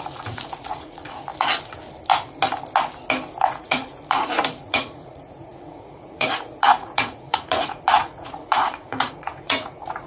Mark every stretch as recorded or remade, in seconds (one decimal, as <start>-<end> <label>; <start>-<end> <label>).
0.0-1.3 remade; 1.3-3.4 recorded; 3.4-10.1 remade